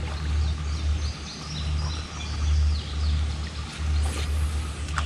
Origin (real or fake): real